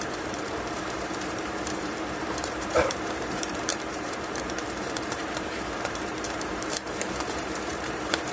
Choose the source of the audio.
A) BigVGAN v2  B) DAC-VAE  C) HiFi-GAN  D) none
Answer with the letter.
A